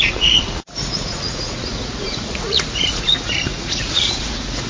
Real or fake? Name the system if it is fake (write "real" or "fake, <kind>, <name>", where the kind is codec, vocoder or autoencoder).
fake, vocoder, Vocos